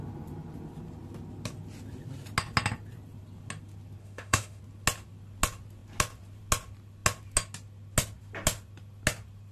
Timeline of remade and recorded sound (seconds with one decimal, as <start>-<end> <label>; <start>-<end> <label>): 0.0-4.0 recorded; 4.0-4.6 remade; 4.6-9.5 recorded